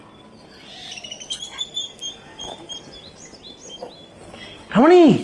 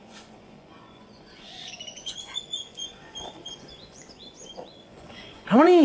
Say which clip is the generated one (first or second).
second